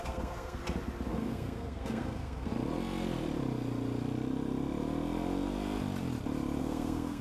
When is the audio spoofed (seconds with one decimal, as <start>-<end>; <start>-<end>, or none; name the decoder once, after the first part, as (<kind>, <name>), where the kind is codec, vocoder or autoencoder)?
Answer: 0.0-0.6 (codec, SNAC); 1.1-2.5; 6.6-7.2